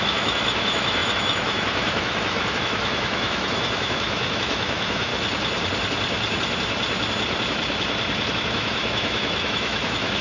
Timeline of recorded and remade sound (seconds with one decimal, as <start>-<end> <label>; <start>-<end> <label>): 0.0-5.1 remade; 5.1-8.3 recorded; 8.3-10.2 remade